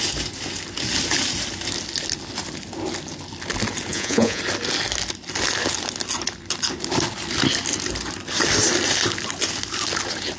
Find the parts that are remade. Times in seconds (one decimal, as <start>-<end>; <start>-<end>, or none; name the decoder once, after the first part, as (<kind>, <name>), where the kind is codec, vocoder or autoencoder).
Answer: 3.9-4.4 (vocoder, Vocos)